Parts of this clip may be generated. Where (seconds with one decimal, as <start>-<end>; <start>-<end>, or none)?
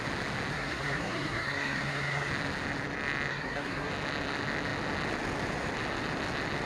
0.5-2.3; 3.3-3.9